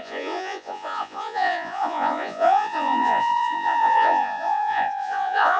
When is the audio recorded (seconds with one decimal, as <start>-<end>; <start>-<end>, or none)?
none